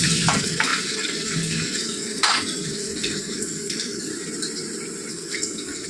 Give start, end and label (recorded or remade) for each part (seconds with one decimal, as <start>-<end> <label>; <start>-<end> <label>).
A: 0.0-4.1 remade; 4.1-5.1 recorded; 5.1-5.9 remade